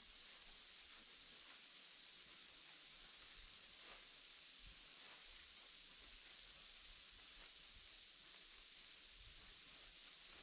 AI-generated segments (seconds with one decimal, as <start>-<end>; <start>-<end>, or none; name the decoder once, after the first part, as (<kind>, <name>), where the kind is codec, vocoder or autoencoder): 0.0-1.5 (vocoder, Vocos); 5.2-5.7